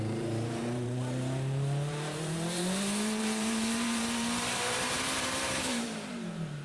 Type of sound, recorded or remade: remade